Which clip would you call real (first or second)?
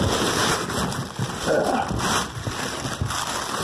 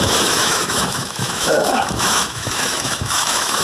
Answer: first